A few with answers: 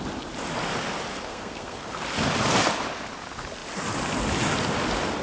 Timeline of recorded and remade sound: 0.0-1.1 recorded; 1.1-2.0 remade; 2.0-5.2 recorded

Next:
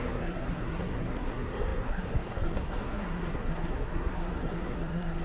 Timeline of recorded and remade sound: 0.0-5.2 remade

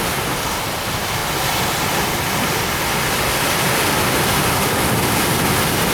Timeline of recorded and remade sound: 0.0-5.9 recorded

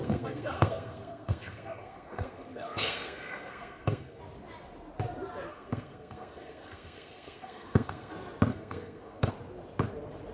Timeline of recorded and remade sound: 0.0-4.2 remade; 4.2-5.5 recorded; 5.5-8.1 remade; 8.1-8.5 recorded; 8.5-9.3 remade; 9.3-10.3 recorded